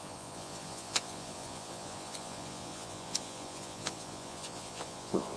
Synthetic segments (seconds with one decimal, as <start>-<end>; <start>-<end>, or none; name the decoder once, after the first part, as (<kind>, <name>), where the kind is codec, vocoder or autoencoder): 0.0-5.4 (vocoder, Vocos)